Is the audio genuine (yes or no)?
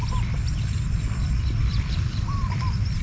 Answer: yes